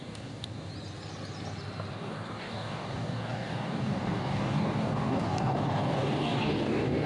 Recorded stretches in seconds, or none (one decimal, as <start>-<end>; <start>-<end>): 0.7-1.9